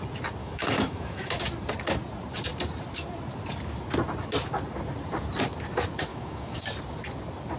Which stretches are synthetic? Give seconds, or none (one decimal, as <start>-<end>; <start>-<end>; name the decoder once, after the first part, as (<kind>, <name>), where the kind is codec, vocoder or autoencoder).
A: 0.4-1.4 (autoencoder, DAC-VAE); 6.1-6.6